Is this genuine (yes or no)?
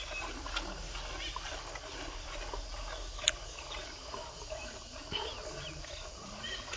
yes